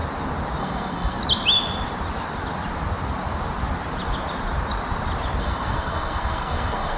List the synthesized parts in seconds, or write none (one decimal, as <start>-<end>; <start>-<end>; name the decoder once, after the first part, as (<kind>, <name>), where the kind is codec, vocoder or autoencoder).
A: 0.6-1.2 (codec, SNAC); 5.4-7.0